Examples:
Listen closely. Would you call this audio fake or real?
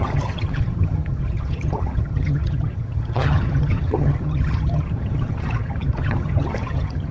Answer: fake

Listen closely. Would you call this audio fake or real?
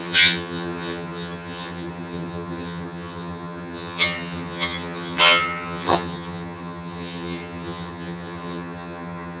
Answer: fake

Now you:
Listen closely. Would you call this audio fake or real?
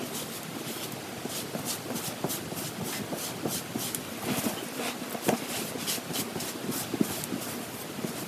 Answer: real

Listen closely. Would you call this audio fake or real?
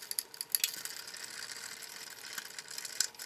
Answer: real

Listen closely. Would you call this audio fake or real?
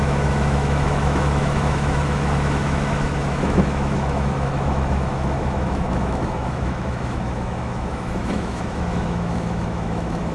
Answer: fake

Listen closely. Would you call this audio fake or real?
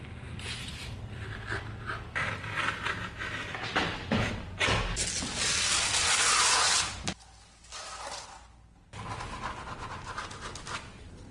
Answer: real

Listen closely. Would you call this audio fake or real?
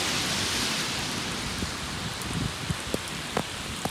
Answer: fake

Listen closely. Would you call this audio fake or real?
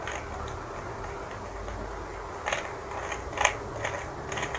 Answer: real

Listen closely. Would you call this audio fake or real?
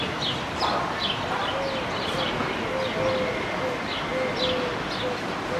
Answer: real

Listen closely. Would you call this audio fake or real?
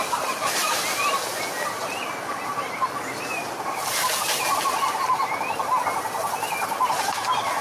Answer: fake